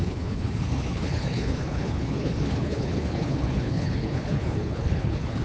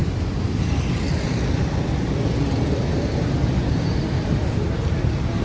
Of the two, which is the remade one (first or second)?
first